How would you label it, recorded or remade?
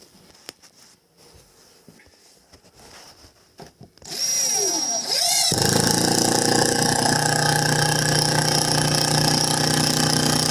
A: recorded